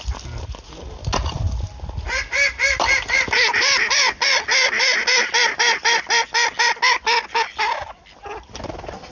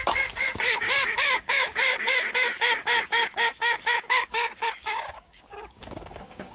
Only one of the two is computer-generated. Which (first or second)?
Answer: second